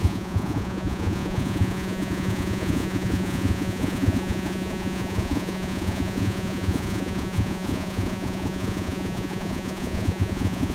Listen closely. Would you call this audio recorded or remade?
remade